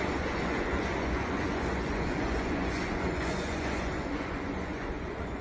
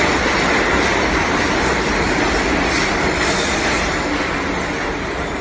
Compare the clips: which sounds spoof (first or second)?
first